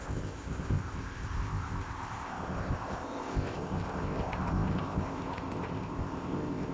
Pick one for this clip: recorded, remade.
remade